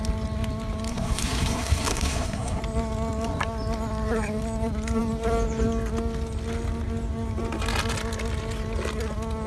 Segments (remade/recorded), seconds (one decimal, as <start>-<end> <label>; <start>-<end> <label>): 0.0-0.9 recorded; 0.9-2.6 remade; 2.6-9.5 recorded